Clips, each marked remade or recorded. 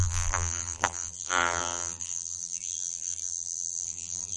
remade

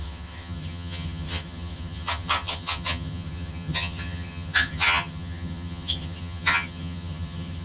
remade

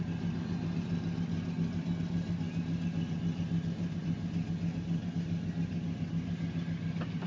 recorded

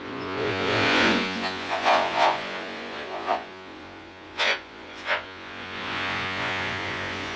remade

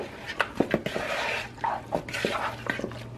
recorded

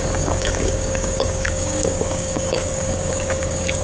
remade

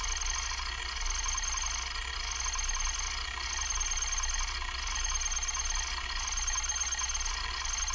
recorded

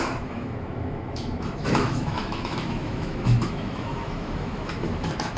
remade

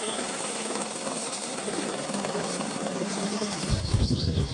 remade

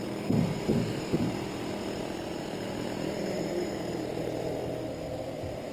remade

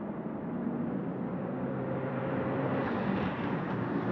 remade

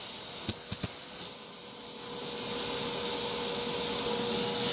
recorded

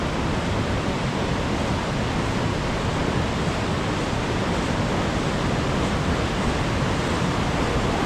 recorded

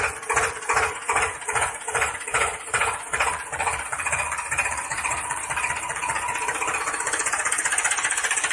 remade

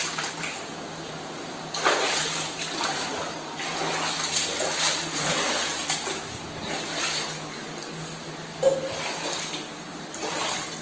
recorded